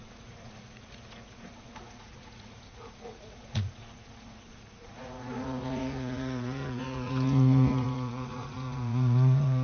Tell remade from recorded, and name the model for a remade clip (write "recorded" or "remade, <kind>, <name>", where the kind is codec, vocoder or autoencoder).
remade, vocoder, Vocos